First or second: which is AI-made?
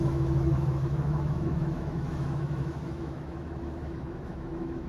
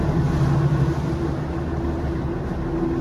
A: first